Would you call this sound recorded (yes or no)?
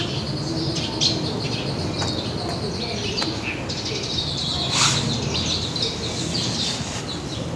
yes